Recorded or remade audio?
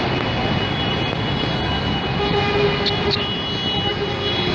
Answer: recorded